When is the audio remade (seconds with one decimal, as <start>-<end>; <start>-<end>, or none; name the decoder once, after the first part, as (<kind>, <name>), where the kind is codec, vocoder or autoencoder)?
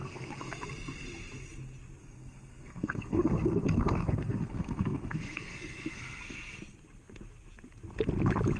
0.0-0.5 (codec, SNAC); 2.0-6.2